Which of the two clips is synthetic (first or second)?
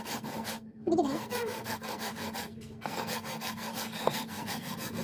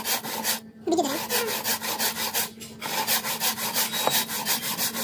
first